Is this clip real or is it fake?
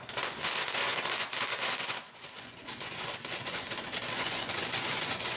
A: fake